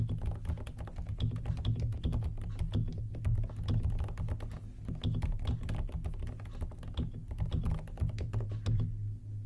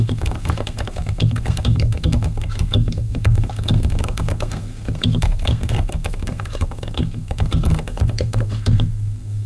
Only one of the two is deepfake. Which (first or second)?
second